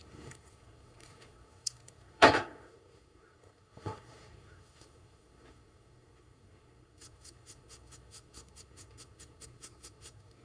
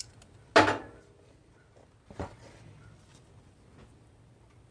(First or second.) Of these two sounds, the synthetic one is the first